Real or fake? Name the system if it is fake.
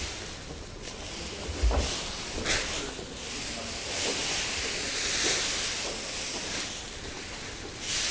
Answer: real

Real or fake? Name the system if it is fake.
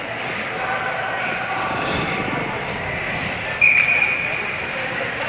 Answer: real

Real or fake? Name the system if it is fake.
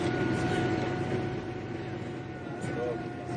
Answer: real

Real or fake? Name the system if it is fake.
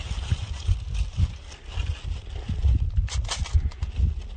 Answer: real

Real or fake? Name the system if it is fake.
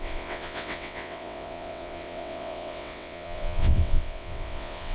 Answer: fake, vocoder, WaveNeXt